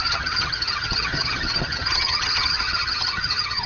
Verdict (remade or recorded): remade